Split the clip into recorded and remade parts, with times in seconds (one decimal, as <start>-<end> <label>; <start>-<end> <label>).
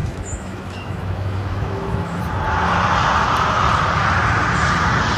0.0-2.2 remade; 2.2-5.2 recorded